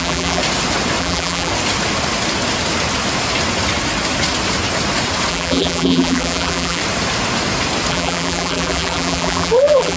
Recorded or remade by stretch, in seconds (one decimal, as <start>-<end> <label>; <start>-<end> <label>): 0.0-0.4 remade; 0.4-1.0 recorded; 1.0-1.5 remade; 1.5-5.3 recorded; 5.3-6.8 remade; 6.8-7.9 recorded; 7.9-10.0 remade